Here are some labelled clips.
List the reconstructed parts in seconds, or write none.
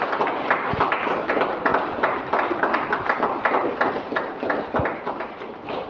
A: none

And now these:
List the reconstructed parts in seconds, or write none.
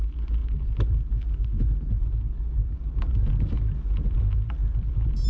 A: none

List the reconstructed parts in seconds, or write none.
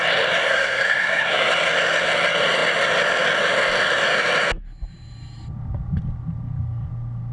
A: 0.4-1.5 (codec, SNAC)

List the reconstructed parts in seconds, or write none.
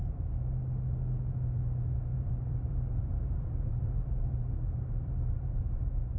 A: 2.1-5.8 (vocoder, BigVGAN v2)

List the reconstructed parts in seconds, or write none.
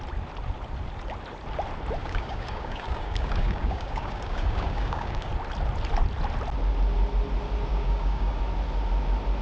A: 2.0-5.3 (codec, DAC); 7.7-8.4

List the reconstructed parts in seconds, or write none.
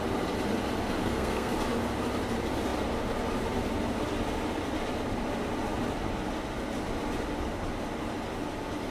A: 1.0-1.5 (codec, SNAC)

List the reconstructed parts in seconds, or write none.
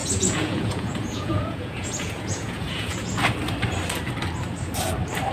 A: 0.0-3.2 (vocoder, Vocos)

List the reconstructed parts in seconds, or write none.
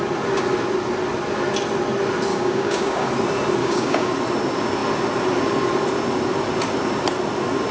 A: 2.3-3.1 (codec, DAC); 3.6-4.1